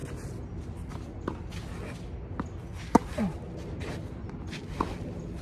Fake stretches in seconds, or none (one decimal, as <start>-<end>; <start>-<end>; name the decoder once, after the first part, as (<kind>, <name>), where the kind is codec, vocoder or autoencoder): none